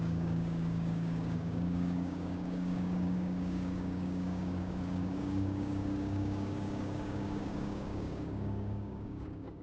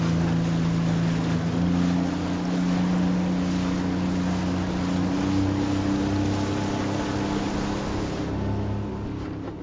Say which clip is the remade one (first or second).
first